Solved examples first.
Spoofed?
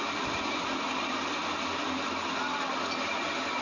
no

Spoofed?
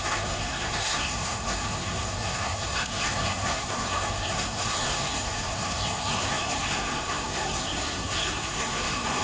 yes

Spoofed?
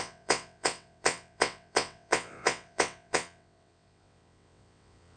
yes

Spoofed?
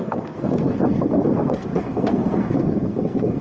yes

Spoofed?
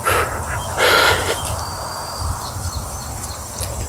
no